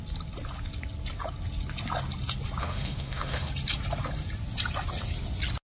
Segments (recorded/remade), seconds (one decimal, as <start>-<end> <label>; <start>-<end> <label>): 0.0-2.6 recorded; 2.6-3.5 remade; 3.5-5.7 recorded